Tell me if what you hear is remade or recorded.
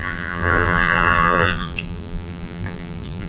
remade